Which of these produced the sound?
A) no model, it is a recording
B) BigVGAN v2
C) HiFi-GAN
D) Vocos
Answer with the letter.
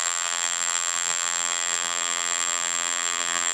B